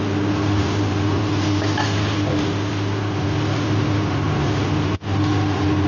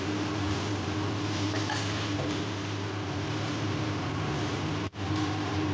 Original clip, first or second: first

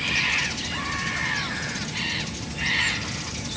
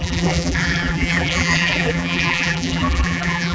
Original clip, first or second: first